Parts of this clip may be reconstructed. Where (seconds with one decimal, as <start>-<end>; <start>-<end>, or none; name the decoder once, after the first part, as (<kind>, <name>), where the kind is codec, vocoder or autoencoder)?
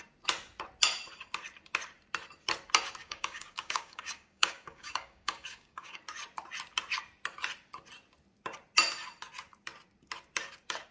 3.0-6.0 (codec, DAC)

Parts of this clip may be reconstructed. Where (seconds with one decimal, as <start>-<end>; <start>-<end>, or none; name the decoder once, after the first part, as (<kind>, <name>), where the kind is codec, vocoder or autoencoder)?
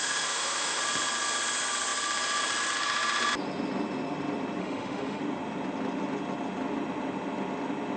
0.0-0.8 (autoencoder, DAC-VAE); 4.6-5.2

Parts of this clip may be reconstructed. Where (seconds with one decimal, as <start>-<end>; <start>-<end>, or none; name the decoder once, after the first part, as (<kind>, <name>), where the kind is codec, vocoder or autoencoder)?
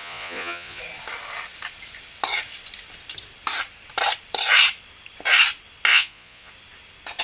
0.0-0.8 (vocoder, Vocos); 5.9-6.5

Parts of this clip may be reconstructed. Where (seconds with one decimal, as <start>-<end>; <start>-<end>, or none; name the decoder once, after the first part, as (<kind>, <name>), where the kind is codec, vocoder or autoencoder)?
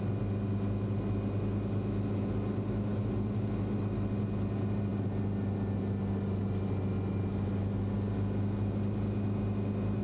none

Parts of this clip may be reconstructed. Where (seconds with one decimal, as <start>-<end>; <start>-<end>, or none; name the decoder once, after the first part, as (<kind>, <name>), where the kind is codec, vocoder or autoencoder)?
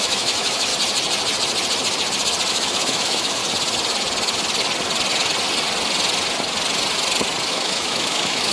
0.0-0.7 (autoencoder, DAC-VAE); 2.5-3.4; 7.5-8.5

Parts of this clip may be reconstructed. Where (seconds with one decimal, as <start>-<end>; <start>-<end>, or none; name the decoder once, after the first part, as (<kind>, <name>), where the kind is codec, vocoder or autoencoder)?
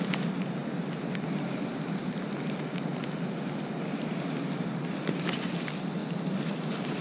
none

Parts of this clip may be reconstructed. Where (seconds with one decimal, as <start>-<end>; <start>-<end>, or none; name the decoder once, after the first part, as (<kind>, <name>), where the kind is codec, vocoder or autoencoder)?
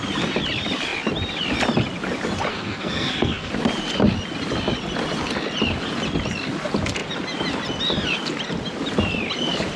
2.5-3.5 (codec, SNAC)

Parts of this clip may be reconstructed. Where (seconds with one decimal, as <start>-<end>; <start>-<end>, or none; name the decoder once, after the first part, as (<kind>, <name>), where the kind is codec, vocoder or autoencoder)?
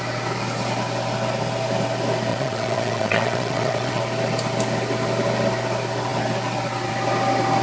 2.3-4.0 (vocoder, WaveNeXt)